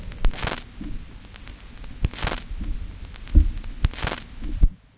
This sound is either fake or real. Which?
real